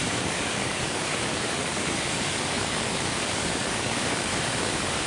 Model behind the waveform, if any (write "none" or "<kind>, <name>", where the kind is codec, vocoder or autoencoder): codec, DAC